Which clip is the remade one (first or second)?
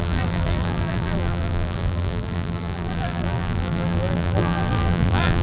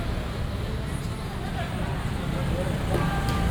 first